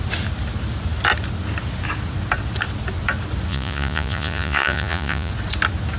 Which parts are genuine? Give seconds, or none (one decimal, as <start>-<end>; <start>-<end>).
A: 0.0-3.5; 5.3-6.0

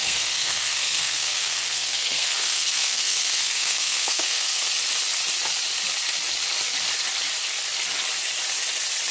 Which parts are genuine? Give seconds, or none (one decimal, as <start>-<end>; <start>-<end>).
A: 4.6-9.1

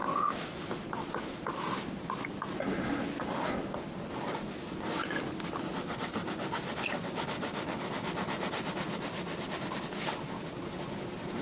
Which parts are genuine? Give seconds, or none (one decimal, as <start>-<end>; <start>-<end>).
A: 0.0-11.4